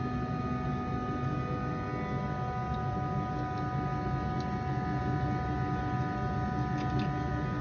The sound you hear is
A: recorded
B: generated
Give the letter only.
A